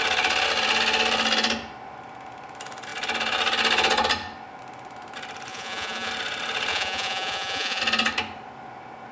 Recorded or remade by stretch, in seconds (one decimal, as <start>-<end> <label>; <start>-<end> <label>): 0.0-5.5 recorded; 5.5-6.1 remade; 6.1-6.7 recorded; 6.7-7.8 remade; 7.8-9.1 recorded

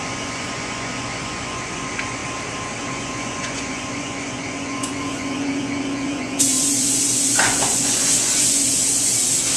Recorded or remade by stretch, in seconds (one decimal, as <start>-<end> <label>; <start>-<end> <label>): 0.0-2.2 remade; 2.2-2.8 recorded; 2.8-9.1 remade; 9.1-9.6 recorded

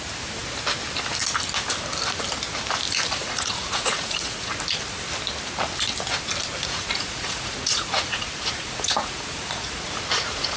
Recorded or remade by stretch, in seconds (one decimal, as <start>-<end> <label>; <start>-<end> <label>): 0.0-3.2 recorded; 3.2-4.5 remade; 4.5-6.6 recorded; 6.6-10.6 remade